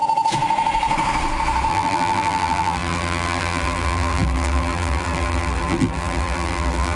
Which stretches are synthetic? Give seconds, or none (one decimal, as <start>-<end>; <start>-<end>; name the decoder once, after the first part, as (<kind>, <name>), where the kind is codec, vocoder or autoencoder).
1.7-7.0 (vocoder, BigVGAN v2)